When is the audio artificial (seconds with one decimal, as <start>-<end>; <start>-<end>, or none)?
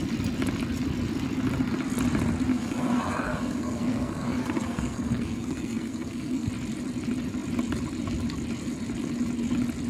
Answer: 2.5-6.5